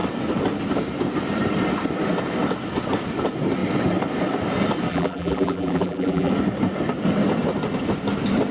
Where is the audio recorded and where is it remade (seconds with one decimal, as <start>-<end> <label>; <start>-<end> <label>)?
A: 0.0-4.9 recorded; 4.9-6.3 remade; 6.3-8.5 recorded